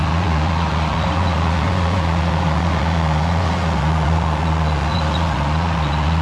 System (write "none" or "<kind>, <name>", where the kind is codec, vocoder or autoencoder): vocoder, Vocos